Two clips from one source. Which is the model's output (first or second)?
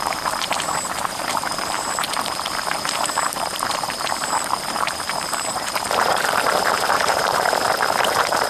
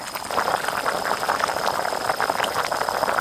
first